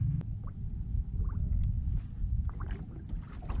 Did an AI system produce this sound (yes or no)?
no